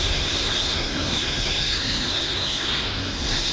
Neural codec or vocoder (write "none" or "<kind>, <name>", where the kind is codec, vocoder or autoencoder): codec, SNAC